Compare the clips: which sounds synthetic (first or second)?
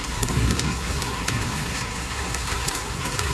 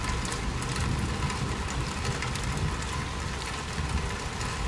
first